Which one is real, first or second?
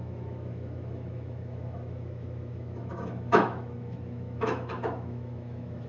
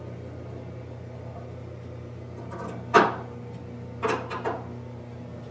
second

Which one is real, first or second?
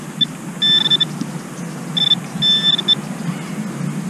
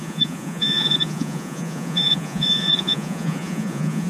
first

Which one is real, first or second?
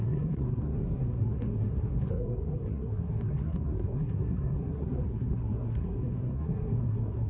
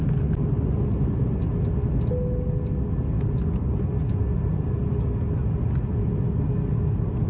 second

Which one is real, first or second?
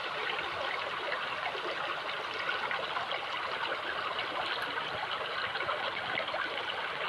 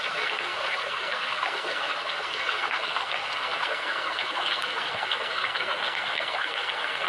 first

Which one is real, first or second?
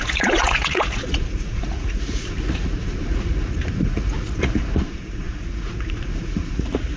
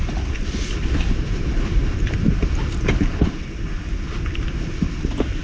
second